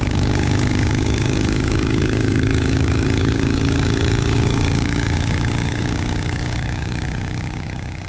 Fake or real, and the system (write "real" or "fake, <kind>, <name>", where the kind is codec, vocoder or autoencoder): fake, codec, DAC